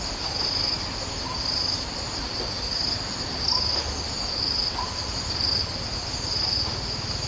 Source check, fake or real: real